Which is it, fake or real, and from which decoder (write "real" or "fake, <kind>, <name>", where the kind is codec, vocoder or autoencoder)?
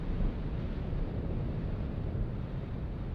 real